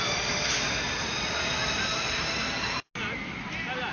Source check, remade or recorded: recorded